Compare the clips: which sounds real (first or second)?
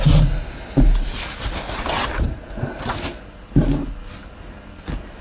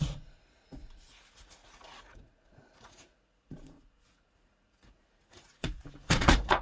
first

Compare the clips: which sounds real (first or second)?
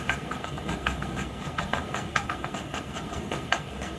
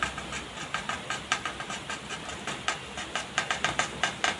second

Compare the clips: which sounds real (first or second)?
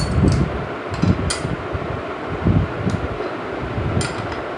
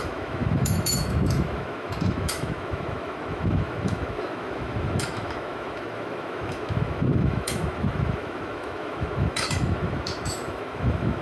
first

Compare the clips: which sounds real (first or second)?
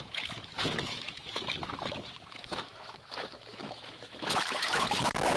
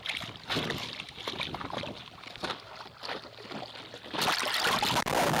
second